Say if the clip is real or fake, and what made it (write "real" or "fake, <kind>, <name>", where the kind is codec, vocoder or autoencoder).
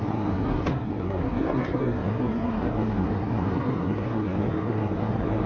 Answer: fake, codec, SNAC